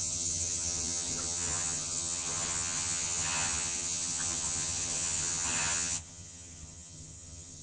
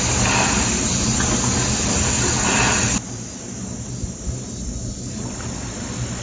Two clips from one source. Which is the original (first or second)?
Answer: second